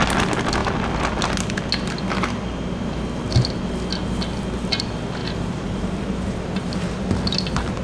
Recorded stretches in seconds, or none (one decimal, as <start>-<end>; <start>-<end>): 0.0-5.2; 7.0-7.8